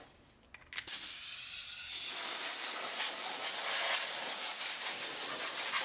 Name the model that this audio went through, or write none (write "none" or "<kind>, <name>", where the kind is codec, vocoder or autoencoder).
none